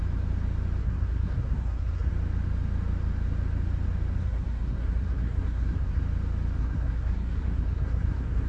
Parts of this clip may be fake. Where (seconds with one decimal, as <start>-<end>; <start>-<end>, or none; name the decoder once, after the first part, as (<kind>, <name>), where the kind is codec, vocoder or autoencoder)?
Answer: 0.8-2.1 (codec, SNAC); 4.2-6.0; 6.6-8.5